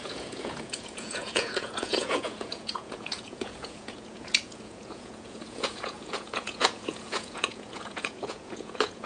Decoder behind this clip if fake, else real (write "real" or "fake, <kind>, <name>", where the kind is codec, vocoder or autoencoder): fake, vocoder, Vocos